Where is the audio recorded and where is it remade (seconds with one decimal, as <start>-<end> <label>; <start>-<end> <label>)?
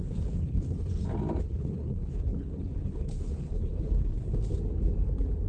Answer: 0.0-0.9 remade; 0.9-1.4 recorded; 1.4-4.5 remade; 4.5-5.5 recorded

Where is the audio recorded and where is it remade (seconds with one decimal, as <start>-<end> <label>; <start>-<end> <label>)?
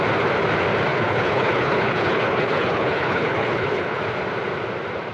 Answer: 0.0-0.9 recorded; 0.9-4.0 remade; 4.0-5.1 recorded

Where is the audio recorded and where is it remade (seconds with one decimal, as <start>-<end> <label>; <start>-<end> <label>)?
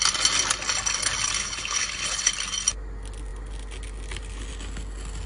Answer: 0.0-1.4 recorded; 1.4-2.3 remade; 2.3-5.3 recorded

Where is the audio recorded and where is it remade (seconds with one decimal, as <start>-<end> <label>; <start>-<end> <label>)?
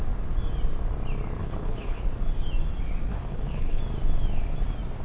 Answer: 0.0-1.4 recorded; 1.4-2.0 remade; 2.0-3.1 recorded; 3.1-3.8 remade; 3.8-5.0 recorded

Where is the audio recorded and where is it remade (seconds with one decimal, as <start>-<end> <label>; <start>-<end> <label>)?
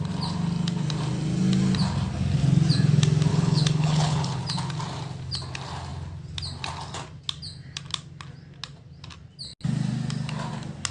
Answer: 0.0-3.3 recorded; 3.3-4.4 remade; 4.4-10.9 recorded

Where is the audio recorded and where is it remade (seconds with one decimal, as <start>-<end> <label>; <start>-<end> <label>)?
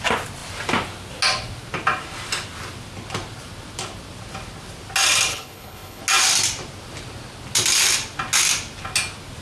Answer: 0.0-5.3 recorded; 5.3-6.0 remade; 6.0-9.4 recorded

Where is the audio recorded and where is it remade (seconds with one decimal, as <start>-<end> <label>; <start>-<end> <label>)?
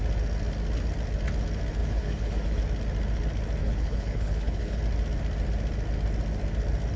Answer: 0.0-1.8 recorded; 1.8-2.6 remade; 2.6-3.6 recorded; 3.6-4.8 remade; 4.8-7.0 recorded